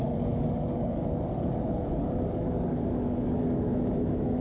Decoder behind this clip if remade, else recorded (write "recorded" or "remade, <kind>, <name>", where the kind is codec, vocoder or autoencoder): remade, codec, DAC